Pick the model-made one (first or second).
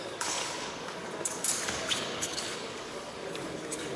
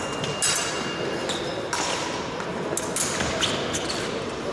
first